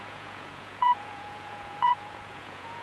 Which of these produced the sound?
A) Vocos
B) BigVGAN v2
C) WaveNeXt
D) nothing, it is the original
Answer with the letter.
A